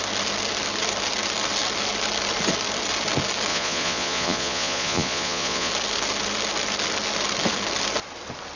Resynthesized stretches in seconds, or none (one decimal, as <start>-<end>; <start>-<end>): 3.5-5.7